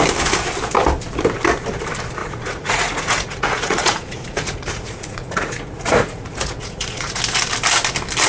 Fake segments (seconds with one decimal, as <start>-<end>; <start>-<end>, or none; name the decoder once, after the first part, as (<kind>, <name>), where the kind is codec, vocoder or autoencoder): 2.2-7.2 (vocoder, Vocos)